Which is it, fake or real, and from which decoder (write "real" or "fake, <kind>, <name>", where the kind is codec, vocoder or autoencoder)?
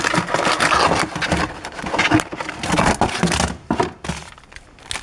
real